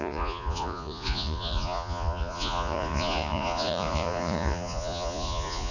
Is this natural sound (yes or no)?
no